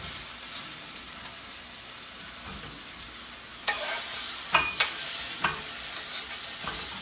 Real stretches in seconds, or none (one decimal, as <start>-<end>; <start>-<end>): 0.0-3.5; 4.0-7.0